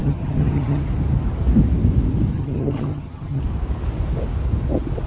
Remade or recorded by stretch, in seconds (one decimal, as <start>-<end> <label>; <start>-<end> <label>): 0.0-0.8 remade; 0.8-2.3 recorded; 2.3-3.4 remade; 3.4-5.1 recorded